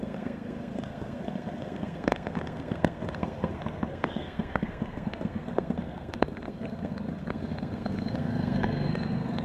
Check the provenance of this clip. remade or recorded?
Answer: remade